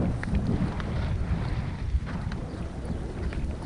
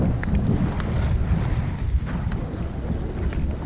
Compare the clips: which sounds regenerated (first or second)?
first